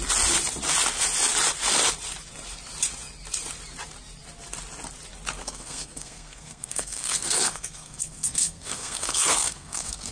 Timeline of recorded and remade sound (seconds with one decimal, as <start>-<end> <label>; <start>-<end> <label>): 0.0-5.4 recorded; 5.4-10.1 remade